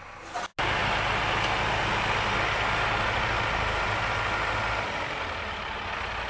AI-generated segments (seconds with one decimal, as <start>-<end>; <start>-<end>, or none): none